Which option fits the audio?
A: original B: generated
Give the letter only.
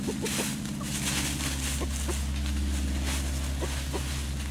A